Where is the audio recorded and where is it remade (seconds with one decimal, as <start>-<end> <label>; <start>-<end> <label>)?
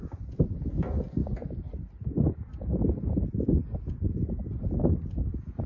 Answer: 0.0-5.7 recorded